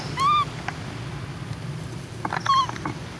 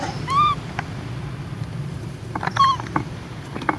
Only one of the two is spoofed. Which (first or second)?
second